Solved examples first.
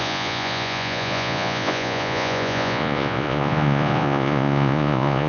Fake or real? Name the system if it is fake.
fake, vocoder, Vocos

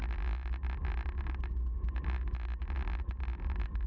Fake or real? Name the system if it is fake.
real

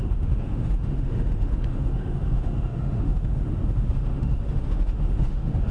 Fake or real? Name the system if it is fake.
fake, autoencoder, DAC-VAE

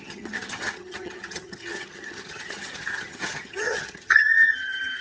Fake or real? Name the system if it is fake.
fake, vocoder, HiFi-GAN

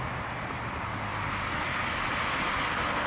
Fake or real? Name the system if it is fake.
real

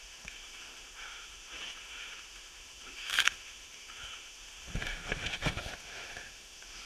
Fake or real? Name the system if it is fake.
fake, autoencoder, DAC-VAE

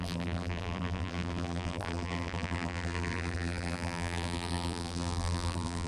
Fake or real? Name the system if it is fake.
fake, vocoder, BigVGAN v2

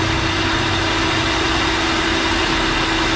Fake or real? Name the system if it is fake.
real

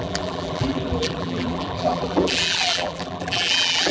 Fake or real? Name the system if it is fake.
fake, vocoder, BigVGAN v2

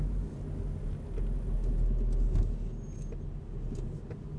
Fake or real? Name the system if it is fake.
real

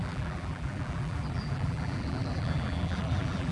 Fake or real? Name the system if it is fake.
fake, vocoder, BigVGAN v2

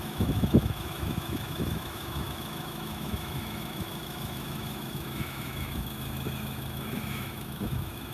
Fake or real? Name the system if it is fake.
fake, autoencoder, DAC-VAE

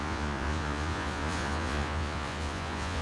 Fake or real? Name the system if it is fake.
fake, vocoder, Vocos